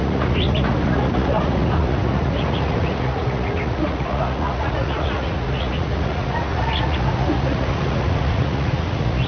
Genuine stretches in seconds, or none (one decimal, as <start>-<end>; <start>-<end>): none